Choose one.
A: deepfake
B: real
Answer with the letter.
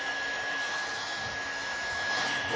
A